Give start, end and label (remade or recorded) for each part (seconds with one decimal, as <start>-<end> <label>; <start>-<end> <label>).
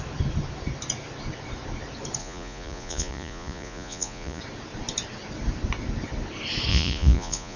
0.0-2.2 recorded; 2.2-4.4 remade; 4.4-6.7 recorded; 6.7-7.6 remade